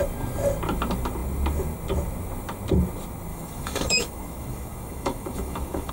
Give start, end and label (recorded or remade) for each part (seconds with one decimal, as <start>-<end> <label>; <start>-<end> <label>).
0.0-3.3 recorded; 3.3-5.9 remade